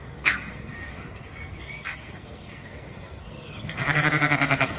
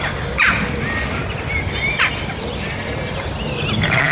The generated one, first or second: first